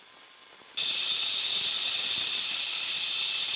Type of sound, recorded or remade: recorded